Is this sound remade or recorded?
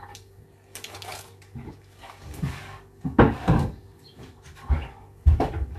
remade